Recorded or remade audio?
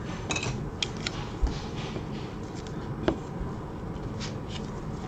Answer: recorded